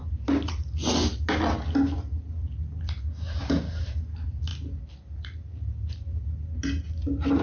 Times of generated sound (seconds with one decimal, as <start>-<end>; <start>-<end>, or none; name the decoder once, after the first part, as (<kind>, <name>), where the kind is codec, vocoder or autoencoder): none